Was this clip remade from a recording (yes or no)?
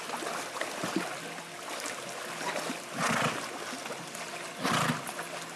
no